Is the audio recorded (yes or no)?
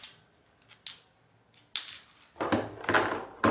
yes